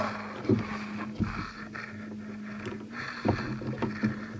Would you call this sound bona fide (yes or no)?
yes